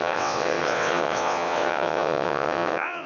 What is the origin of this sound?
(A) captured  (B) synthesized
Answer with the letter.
B